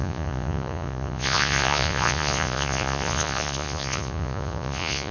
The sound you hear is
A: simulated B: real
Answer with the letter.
A